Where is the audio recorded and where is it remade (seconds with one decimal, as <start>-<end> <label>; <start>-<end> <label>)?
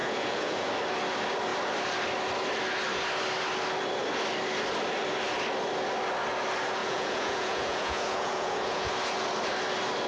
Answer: 0.0-0.7 remade; 0.7-6.8 recorded; 6.8-8.9 remade; 8.9-10.1 recorded